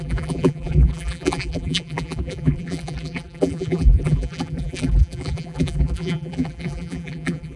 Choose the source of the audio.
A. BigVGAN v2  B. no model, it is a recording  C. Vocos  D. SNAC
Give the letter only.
A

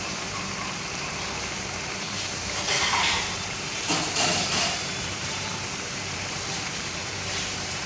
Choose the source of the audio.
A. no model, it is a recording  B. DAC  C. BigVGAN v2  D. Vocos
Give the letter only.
C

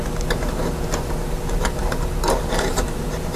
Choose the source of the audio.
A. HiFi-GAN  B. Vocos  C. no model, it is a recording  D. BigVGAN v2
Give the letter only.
D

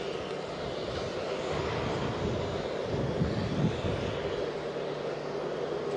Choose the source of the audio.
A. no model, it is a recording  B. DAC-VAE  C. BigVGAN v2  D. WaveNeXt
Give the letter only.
A